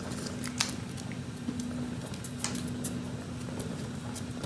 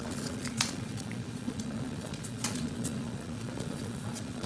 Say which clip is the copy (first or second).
second